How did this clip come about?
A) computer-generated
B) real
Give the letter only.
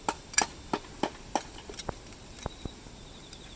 B